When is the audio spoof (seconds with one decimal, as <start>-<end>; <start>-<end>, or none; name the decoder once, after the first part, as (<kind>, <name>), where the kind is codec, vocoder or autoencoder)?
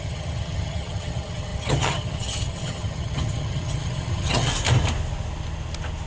0.0-4.5 (vocoder, HiFi-GAN)